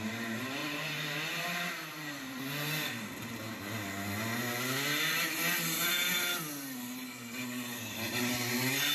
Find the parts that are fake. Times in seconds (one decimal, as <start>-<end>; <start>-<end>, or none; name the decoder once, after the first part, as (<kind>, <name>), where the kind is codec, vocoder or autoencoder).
0.6-2.4 (vocoder, BigVGAN v2)